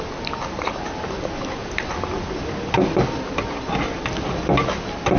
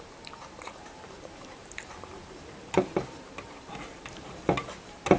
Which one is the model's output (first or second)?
second